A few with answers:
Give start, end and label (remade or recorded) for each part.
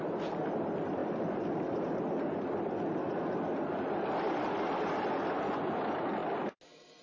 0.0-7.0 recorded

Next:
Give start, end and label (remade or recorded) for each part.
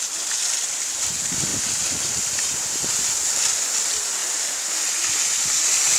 0.0-1.5 recorded; 1.5-2.9 remade; 2.9-4.2 recorded; 4.2-5.4 remade; 5.4-6.0 recorded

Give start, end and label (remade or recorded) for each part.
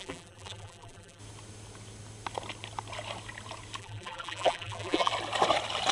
0.0-1.2 remade; 1.2-3.8 recorded; 3.8-5.1 remade; 5.1-5.9 recorded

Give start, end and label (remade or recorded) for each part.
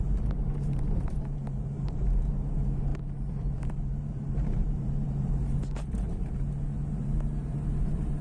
0.0-8.2 remade